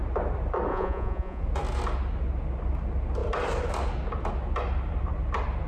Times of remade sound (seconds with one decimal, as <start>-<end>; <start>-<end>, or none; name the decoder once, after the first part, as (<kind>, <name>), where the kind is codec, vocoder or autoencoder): 0.7-1.4 (vocoder, Vocos)